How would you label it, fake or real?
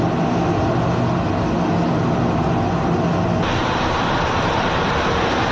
real